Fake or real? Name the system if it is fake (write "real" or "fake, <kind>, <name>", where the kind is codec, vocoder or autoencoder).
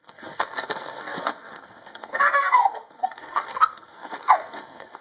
fake, codec, SNAC